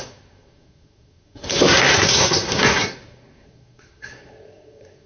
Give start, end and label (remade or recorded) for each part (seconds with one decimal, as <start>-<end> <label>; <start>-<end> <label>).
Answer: 0.0-5.1 remade